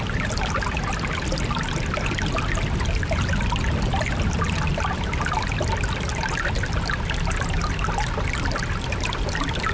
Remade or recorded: recorded